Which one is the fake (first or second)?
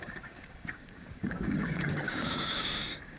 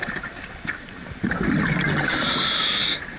first